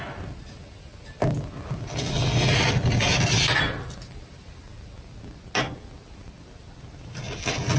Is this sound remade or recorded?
recorded